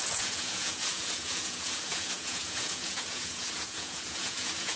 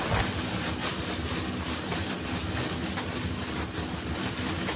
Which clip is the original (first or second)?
second